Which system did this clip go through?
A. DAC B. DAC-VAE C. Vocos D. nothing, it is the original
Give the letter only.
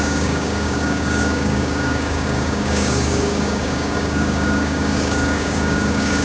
A